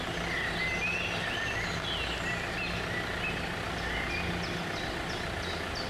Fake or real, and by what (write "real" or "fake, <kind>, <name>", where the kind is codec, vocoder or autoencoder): real